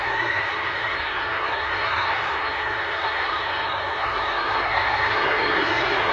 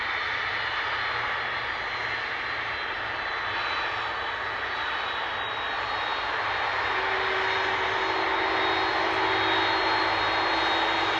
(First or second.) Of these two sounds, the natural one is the second